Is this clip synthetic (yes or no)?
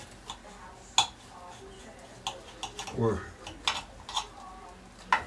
no